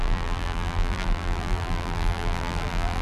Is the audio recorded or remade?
remade